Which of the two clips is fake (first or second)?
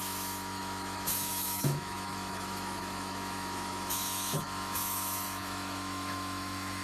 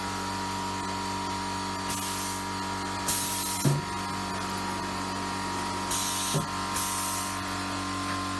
first